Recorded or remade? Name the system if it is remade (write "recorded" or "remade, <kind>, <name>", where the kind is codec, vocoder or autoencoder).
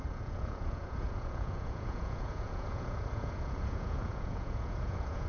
remade, vocoder, Vocos